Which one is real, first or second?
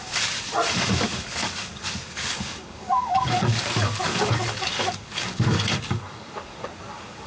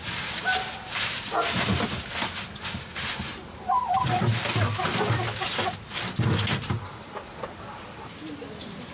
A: second